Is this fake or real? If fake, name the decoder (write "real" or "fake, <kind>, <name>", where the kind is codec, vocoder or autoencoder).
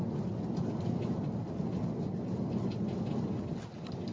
real